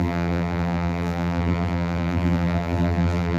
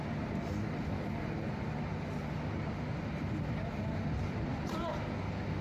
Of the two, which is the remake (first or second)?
first